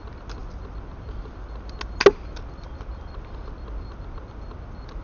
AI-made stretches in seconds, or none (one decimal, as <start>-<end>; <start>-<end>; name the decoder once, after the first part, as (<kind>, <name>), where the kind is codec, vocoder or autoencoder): none